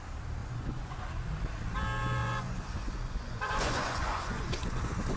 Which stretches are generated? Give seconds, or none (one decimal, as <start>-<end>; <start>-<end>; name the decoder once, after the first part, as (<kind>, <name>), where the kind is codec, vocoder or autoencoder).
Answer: 0.4-1.3 (vocoder, Vocos); 2.2-5.2